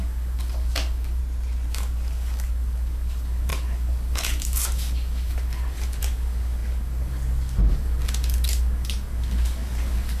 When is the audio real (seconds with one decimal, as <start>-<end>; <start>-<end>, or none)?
1.2-1.7